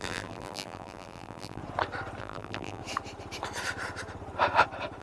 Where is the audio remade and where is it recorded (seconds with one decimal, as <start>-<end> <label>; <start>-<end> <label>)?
0.0-1.6 remade; 1.6-2.2 recorded; 2.2-2.8 remade; 2.8-5.0 recorded